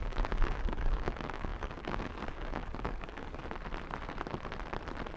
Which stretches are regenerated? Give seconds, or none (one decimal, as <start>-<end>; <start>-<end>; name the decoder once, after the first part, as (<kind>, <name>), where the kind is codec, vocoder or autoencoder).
0.0-3.4 (codec, DAC)